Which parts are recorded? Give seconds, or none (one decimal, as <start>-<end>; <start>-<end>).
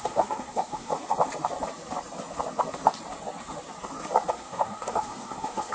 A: 0.9-4.3